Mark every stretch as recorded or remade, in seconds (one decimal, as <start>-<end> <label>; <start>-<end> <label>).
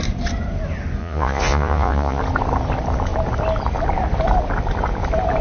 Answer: 0.0-1.0 recorded; 1.0-2.2 remade; 2.2-5.4 recorded